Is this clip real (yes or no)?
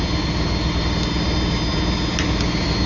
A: yes